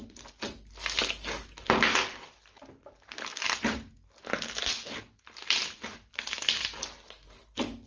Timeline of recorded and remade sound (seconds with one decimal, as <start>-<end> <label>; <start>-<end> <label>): 0.0-7.9 recorded